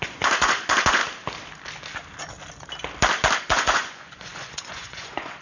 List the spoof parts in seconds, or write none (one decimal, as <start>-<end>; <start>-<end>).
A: 0.0-1.0; 3.4-5.4